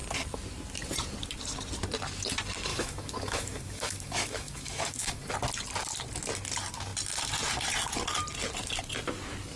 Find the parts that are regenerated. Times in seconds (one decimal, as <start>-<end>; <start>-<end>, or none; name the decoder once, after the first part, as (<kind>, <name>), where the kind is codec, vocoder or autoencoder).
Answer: 2.7-5.3 (autoencoder, DAC-VAE)